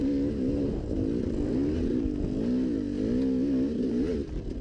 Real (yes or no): yes